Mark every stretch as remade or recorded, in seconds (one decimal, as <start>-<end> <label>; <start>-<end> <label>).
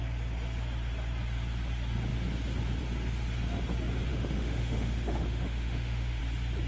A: 0.0-4.1 recorded; 4.1-6.2 remade; 6.2-6.7 recorded